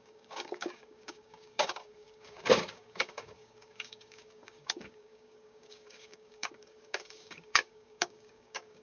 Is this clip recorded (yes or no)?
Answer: no